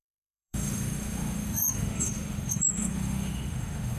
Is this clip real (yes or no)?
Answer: no